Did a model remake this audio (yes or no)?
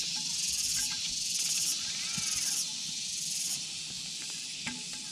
no